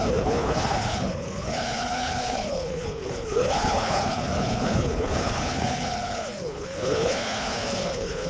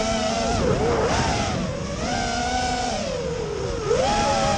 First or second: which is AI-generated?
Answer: first